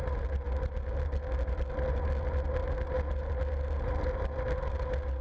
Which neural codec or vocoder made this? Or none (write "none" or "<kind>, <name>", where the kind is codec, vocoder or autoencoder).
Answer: none